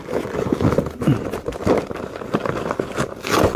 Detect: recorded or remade recorded